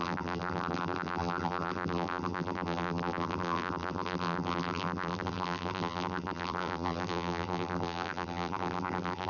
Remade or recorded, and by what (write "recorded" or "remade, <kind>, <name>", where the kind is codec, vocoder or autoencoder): remade, vocoder, BigVGAN v2